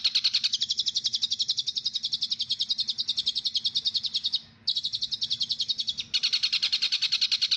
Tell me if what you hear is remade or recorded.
recorded